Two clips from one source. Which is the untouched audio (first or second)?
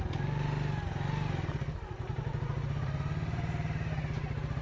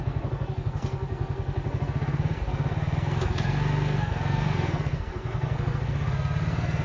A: first